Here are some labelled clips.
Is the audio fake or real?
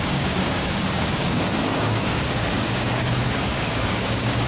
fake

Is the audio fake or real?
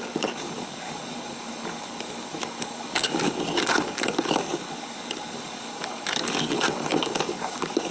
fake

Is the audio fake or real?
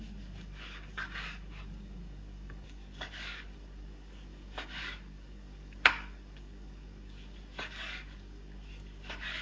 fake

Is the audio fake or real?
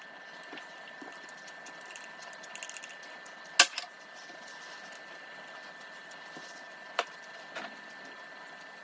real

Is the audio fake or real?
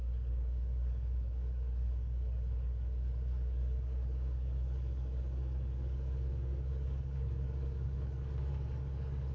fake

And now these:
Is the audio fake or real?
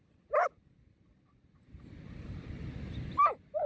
real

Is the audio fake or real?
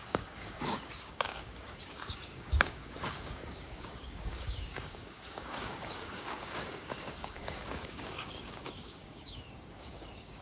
fake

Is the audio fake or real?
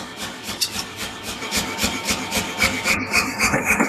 fake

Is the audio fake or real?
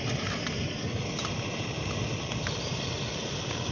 real